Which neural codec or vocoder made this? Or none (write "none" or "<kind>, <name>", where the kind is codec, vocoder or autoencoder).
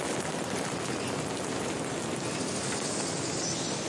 none